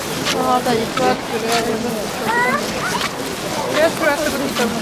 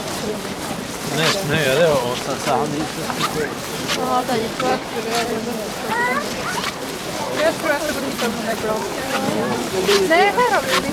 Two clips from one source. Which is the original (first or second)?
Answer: first